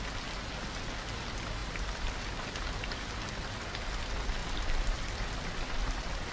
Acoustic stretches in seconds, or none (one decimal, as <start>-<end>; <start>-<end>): 0.0-1.6; 3.4-4.4